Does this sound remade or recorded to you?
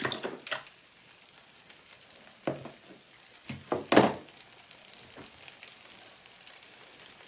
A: recorded